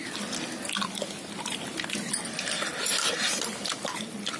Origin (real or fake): real